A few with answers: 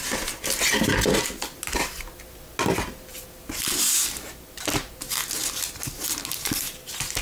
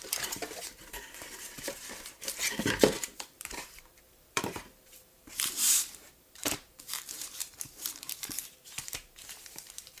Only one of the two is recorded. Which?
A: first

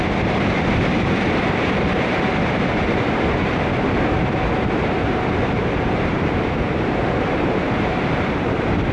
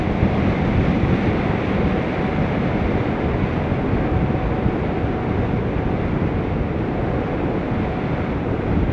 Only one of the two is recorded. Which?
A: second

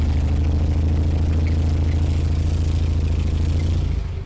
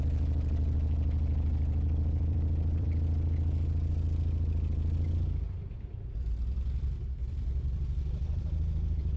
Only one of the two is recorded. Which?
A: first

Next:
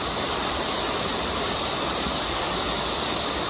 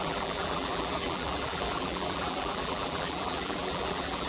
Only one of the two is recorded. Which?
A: first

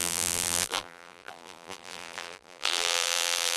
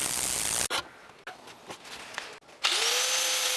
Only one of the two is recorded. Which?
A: second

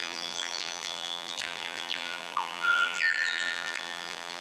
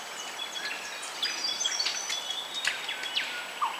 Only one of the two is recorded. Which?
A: second